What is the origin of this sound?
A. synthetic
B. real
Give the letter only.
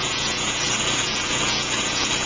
A